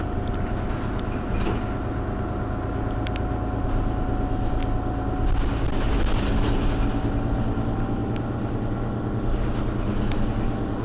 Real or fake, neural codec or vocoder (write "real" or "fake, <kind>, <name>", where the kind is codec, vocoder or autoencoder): real